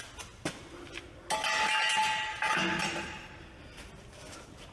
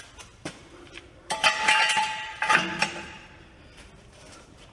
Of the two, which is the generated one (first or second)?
second